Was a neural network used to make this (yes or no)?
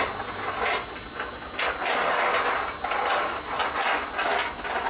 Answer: no